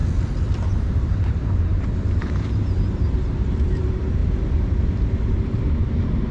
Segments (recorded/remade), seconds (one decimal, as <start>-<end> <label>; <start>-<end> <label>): 0.0-0.5 recorded; 0.5-4.2 remade; 4.2-5.2 recorded; 5.2-6.3 remade